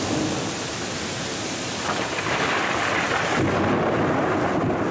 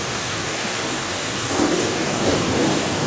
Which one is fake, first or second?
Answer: second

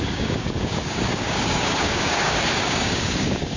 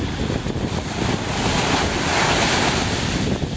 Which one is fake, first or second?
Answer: first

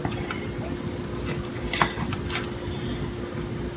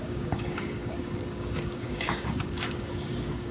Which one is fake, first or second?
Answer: second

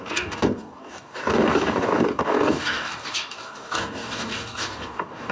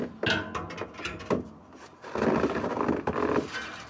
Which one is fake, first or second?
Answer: first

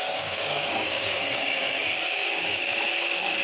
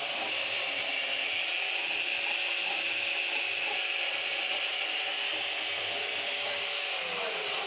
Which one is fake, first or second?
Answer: first